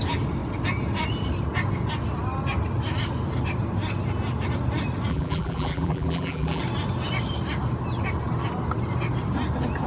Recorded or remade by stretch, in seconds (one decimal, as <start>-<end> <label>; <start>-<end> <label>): 0.0-5.1 recorded; 5.1-6.6 remade; 6.6-9.9 recorded